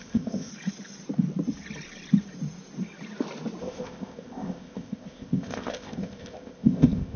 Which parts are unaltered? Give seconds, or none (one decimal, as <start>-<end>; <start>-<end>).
0.5-3.6